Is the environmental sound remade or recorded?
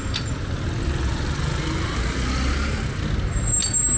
recorded